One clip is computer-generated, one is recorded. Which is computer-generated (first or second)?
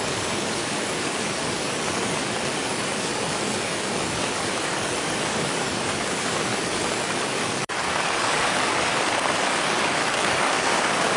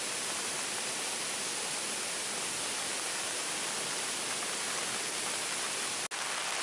first